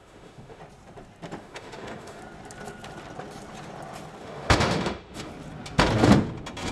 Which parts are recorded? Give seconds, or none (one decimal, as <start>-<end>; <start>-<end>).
0.6-1.4; 2.2-4.2; 5.3-6.7